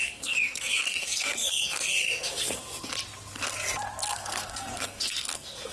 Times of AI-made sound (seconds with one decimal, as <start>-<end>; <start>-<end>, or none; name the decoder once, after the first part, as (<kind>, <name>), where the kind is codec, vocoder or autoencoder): 0.0-2.9 (codec, SNAC); 4.1-5.7